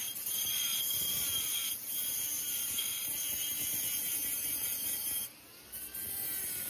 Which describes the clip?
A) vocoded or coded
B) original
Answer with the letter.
B